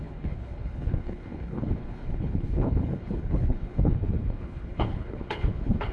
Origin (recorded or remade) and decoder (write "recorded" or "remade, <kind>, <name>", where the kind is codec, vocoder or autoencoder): remade, codec, HILCodec